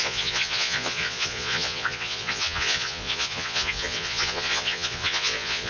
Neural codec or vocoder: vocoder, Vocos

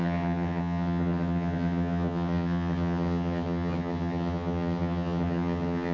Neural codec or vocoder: vocoder, HiFi-GAN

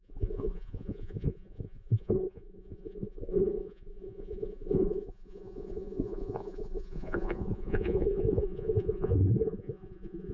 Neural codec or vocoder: vocoder, Vocos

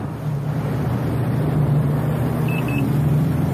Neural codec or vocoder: vocoder, BigVGAN v2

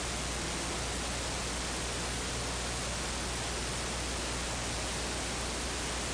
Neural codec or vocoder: none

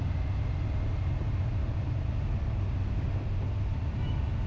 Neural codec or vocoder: none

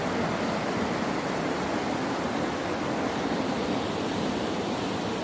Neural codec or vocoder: none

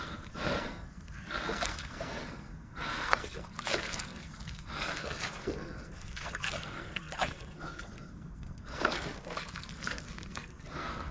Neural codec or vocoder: codec, SNAC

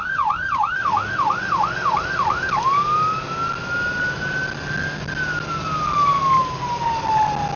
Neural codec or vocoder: none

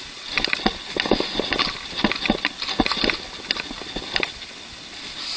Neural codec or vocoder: none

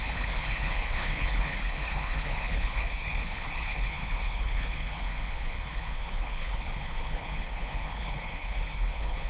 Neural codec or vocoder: codec, HILCodec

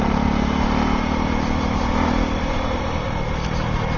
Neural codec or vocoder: none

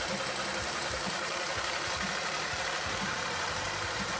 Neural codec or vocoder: vocoder, BigVGAN v2